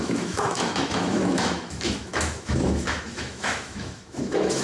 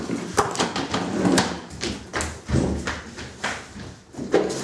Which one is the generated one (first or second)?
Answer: first